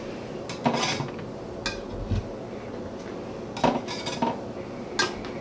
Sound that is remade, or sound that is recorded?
recorded